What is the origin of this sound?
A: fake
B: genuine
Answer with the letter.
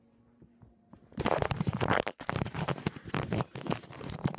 A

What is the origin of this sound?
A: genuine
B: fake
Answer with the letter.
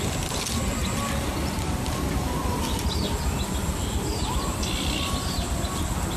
A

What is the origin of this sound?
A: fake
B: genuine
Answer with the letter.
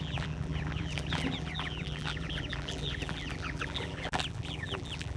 A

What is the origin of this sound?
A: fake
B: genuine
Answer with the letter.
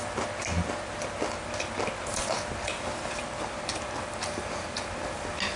B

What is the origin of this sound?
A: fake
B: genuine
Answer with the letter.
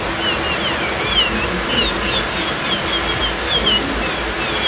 B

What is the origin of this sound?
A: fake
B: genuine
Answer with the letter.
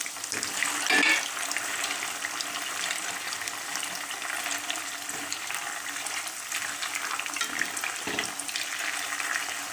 B